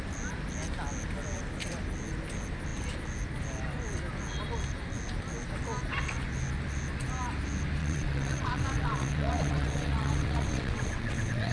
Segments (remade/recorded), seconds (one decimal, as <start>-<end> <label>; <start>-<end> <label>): 0.0-7.8 recorded; 7.8-11.5 remade